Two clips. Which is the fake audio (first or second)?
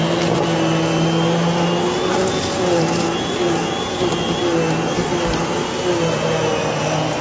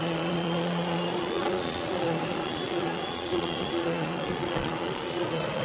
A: second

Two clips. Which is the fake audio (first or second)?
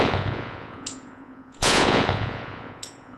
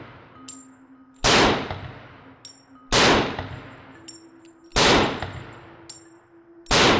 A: first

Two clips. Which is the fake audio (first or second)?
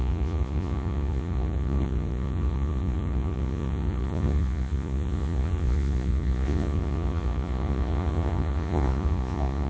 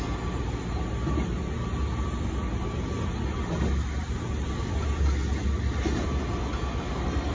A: first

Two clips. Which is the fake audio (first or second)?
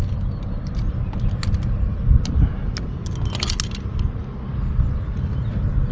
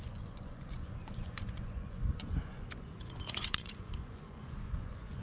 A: second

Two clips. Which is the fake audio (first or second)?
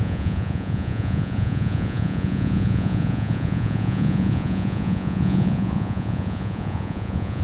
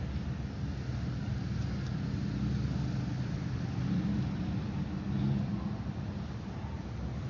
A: first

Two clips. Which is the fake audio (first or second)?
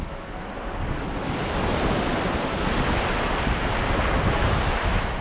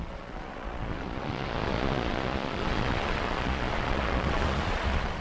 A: second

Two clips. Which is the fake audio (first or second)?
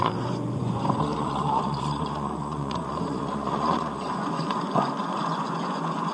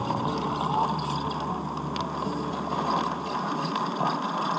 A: first